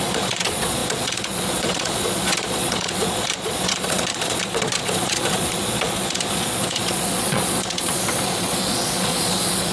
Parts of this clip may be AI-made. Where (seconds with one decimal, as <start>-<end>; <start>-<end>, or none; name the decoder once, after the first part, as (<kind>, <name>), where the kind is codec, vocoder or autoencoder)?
0.0-9.7 (vocoder, Vocos)